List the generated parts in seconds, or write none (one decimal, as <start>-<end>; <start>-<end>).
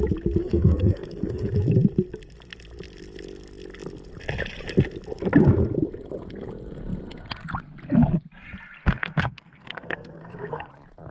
0.4-1.5; 8.8-10.7